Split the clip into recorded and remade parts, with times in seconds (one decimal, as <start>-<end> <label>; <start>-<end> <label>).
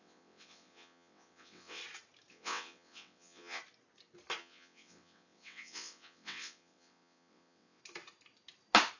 0.0-1.8 remade; 1.8-2.3 recorded; 2.3-3.6 remade; 3.6-4.4 recorded; 4.4-7.8 remade; 7.8-9.0 recorded